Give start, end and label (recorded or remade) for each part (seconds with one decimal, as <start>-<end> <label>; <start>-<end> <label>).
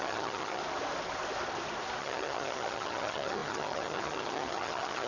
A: 0.0-0.6 remade; 0.6-2.0 recorded; 2.0-5.1 remade